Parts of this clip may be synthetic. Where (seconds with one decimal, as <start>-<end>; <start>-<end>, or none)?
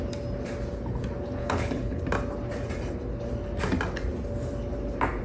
1.4-2.0